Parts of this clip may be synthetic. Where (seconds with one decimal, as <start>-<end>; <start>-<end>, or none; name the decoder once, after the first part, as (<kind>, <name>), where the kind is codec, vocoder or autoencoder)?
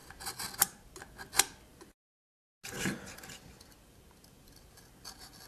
none